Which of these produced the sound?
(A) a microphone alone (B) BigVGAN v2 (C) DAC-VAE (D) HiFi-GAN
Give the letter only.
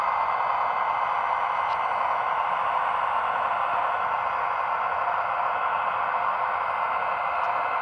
A